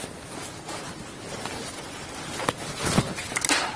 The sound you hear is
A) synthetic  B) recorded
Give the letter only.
B